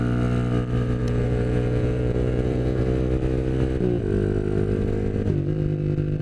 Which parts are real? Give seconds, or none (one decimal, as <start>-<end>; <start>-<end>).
0.0-1.0; 2.8-6.2